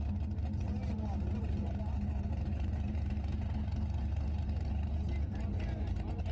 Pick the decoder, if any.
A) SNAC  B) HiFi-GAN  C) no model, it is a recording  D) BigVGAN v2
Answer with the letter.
C